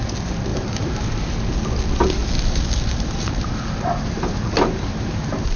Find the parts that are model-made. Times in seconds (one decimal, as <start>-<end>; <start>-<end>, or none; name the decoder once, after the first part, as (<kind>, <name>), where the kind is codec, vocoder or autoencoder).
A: 0.5-1.0 (vocoder, BigVGAN v2); 2.2-5.6